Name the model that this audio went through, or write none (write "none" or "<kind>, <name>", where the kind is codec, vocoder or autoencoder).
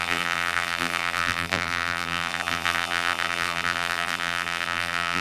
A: vocoder, BigVGAN v2